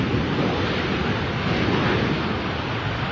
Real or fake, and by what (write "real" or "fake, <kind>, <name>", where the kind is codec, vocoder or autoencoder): real